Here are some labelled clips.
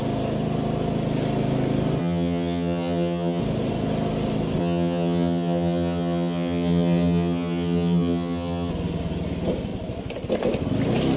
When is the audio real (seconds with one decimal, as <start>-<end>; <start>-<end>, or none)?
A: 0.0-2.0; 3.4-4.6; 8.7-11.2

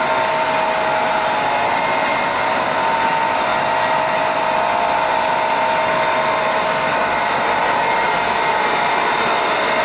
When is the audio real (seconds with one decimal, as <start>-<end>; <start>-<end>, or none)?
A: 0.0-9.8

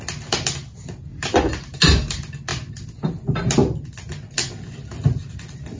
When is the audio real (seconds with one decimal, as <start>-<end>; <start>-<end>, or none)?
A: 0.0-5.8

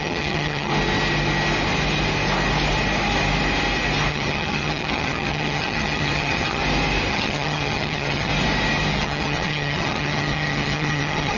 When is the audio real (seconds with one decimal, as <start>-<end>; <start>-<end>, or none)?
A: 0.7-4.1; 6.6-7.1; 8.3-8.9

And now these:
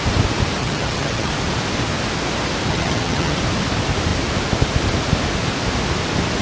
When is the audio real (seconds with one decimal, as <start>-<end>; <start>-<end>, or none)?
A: 0.0-0.6; 1.3-2.7; 3.4-6.4

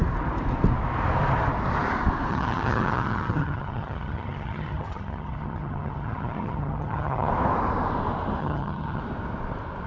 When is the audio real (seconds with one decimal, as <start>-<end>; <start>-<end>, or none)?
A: 0.0-2.3; 7.3-8.4; 9.0-9.9